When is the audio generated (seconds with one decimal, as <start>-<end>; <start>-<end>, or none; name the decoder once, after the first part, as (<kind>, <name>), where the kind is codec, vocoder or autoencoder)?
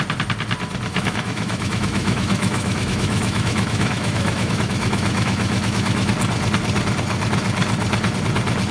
0.9-6.1 (autoencoder, DAC-VAE)